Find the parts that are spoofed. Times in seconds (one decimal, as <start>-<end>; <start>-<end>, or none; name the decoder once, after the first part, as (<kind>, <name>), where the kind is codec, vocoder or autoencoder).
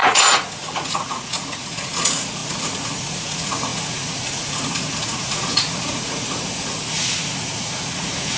0.0-8.4 (vocoder, Vocos)